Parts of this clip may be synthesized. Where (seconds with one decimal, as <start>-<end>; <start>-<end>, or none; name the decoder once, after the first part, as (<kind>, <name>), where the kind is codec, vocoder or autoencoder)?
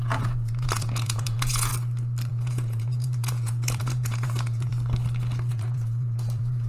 0.0-1.7 (vocoder, Vocos); 2.3-4.7; 5.5-6.7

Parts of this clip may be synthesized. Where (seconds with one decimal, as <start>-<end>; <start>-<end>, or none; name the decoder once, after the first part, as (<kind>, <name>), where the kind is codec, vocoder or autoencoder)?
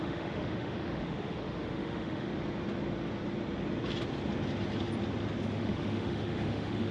0.0-2.3 (autoencoder, DAC-VAE); 5.4-6.9